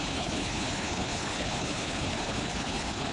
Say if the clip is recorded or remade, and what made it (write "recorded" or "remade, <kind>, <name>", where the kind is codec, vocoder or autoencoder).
remade, codec, HILCodec